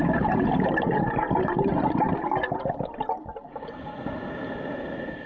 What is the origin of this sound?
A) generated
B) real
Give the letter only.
B